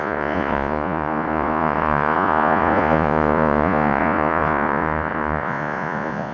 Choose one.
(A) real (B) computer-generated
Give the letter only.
B